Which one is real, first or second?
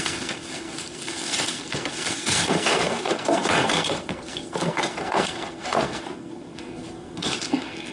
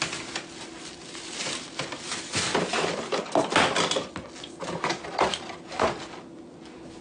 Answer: second